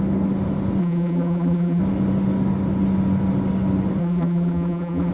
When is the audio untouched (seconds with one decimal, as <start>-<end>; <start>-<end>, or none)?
0.0-0.8; 1.8-4.0